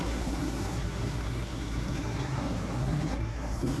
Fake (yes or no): yes